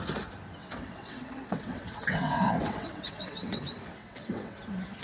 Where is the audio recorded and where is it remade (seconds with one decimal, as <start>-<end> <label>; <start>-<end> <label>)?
0.0-0.6 recorded; 0.6-3.6 remade; 3.6-4.0 recorded; 4.0-4.6 remade; 4.6-5.0 recorded